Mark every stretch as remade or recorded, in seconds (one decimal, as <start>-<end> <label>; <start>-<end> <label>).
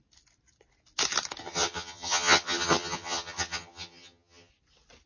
0.0-1.4 recorded; 1.4-4.5 remade; 4.5-5.1 recorded